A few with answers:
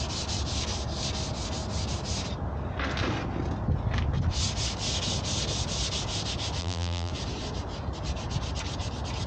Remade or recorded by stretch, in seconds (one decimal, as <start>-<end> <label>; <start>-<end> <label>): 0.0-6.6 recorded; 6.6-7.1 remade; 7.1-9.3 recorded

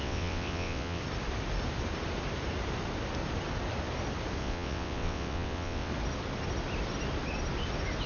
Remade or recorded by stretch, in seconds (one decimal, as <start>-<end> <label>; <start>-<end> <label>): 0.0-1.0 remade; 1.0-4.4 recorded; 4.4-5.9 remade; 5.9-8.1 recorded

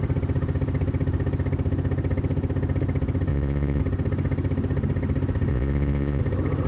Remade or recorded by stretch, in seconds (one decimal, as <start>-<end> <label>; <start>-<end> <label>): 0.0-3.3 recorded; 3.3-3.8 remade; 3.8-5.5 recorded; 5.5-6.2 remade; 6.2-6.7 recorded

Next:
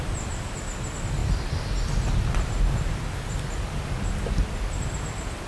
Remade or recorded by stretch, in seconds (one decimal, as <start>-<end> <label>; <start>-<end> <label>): 0.0-5.5 recorded